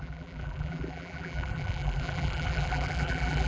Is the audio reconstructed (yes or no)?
yes